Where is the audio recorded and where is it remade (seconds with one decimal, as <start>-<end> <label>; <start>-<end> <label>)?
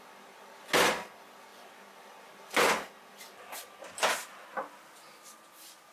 0.0-5.9 recorded